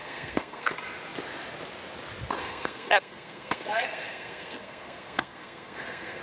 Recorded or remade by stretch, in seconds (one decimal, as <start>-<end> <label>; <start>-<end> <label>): 0.0-0.7 remade; 0.7-2.4 recorded; 2.4-6.2 remade